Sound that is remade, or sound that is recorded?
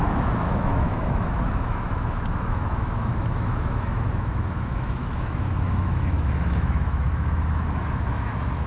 remade